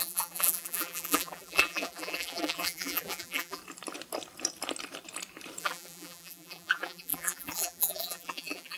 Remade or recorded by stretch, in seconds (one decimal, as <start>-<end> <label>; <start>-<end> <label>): 0.0-3.6 remade; 3.6-5.6 recorded; 5.6-8.8 remade